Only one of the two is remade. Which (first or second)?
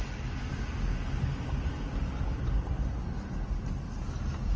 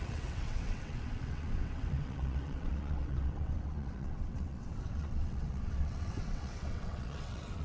second